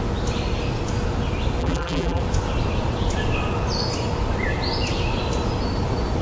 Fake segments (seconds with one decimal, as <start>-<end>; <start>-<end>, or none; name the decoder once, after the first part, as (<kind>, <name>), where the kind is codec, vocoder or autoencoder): 1.6-2.2 (vocoder, BigVGAN v2)